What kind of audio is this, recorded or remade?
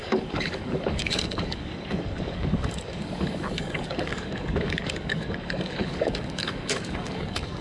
remade